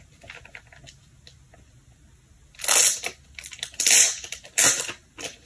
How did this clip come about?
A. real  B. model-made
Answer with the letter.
A